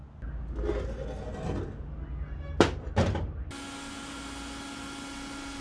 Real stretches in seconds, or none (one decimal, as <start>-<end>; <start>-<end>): 0.0-5.6